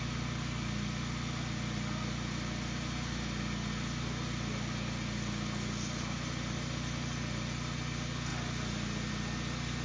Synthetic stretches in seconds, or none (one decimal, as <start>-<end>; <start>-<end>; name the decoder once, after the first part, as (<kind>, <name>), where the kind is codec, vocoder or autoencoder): none